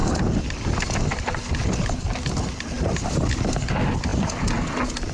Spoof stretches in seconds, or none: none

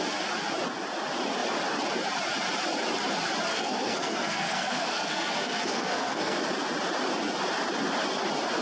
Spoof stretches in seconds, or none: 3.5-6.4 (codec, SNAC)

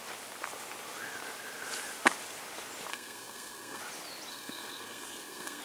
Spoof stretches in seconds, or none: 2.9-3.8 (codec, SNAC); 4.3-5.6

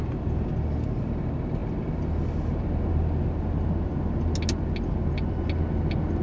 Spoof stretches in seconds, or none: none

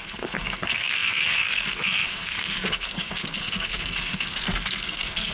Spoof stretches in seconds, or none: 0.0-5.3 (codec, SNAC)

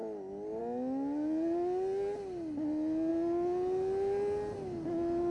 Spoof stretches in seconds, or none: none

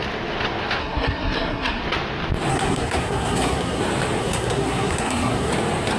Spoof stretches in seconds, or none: 0.8-1.8 (codec, SNAC); 2.5-3.8; 4.2-5.5

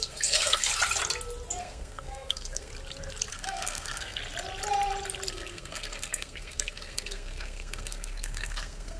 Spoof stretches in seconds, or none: 0.0-0.7 (codec, SNAC); 1.6-2.7; 3.3-4.2; 5.3-9.0